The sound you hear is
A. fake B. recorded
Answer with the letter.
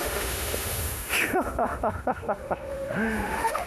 A